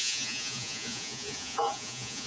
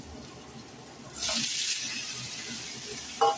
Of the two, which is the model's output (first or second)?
first